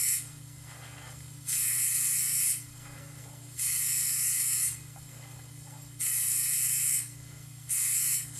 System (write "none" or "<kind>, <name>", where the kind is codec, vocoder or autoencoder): codec, SNAC